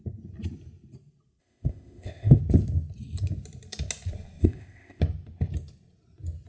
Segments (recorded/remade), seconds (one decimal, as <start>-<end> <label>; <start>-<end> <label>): 0.0-1.4 recorded; 1.4-2.4 remade; 2.4-4.4 recorded; 4.4-5.0 remade; 5.0-6.5 recorded